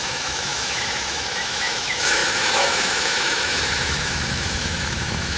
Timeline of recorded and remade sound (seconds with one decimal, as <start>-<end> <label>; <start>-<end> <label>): 0.0-5.4 remade